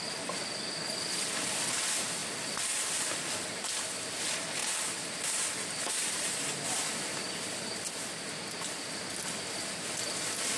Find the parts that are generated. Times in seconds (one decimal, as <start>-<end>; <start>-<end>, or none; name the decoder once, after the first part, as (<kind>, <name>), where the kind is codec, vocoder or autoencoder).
none